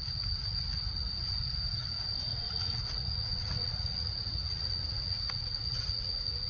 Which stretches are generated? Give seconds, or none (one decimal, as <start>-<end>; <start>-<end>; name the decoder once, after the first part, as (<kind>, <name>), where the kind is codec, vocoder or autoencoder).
2.3-6.5 (vocoder, Vocos)